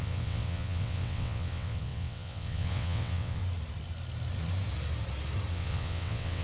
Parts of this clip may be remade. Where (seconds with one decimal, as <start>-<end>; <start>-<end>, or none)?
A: 0.0-3.4; 5.5-6.4